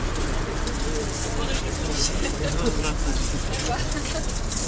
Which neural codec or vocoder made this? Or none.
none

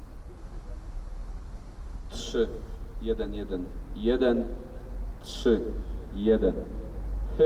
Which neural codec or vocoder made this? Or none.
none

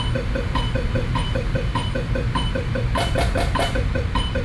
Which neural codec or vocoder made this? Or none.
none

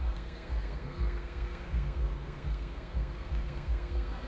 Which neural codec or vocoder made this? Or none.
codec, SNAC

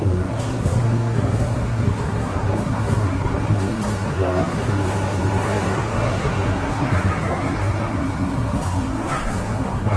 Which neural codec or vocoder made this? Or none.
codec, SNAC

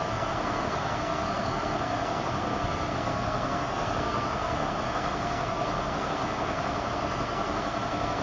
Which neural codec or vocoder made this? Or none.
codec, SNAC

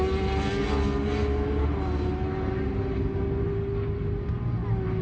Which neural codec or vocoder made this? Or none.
none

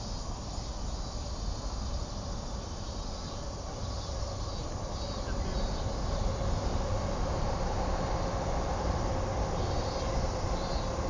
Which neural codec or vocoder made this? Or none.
none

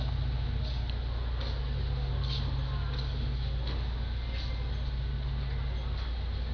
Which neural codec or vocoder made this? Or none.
none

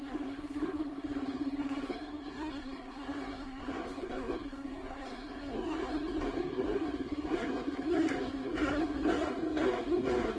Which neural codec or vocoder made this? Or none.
codec, SNAC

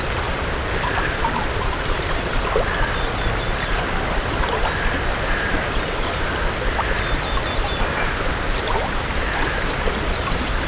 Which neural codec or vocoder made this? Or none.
none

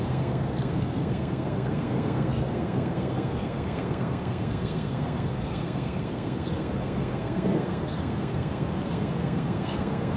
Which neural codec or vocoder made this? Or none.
codec, SNAC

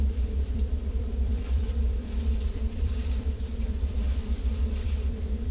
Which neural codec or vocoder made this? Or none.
vocoder, BigVGAN v2